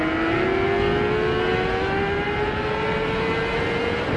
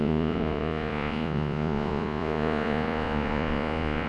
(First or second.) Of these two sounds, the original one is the first